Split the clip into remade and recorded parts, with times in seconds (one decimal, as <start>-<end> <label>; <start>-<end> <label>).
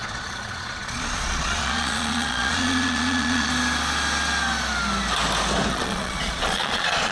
0.0-3.5 remade; 3.5-5.7 recorded; 5.7-7.1 remade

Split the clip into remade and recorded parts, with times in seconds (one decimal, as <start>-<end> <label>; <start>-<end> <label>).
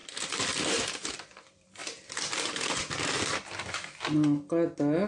0.0-1.8 remade; 1.8-5.1 recorded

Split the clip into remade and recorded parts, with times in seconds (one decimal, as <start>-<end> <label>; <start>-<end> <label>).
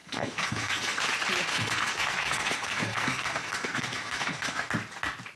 0.0-1.0 remade; 1.0-1.5 recorded; 1.5-4.7 remade; 4.7-5.4 recorded